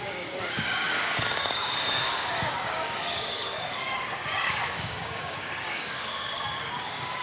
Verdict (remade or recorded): remade